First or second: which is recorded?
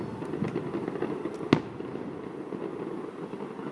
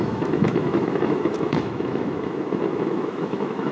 first